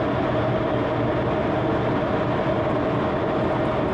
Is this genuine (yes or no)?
yes